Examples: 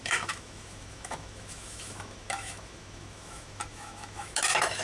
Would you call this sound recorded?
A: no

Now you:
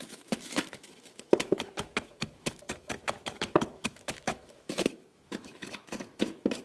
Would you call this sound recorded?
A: no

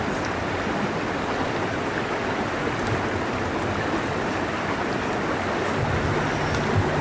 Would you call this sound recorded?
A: yes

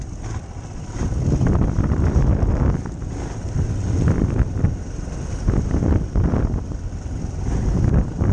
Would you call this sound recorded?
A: yes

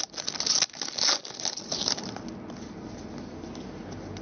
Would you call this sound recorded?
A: yes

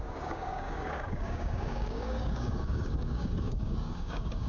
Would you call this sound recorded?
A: no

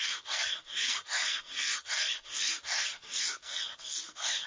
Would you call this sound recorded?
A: no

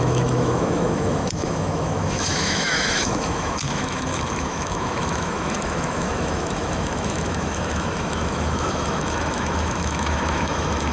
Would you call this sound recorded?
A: no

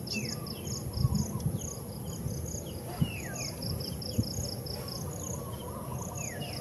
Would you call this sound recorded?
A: yes